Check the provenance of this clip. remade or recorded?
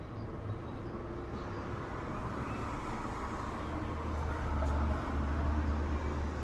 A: recorded